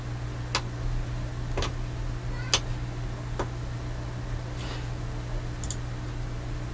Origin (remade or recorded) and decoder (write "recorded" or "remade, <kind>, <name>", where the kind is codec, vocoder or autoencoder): recorded